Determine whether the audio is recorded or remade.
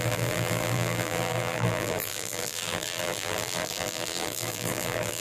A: remade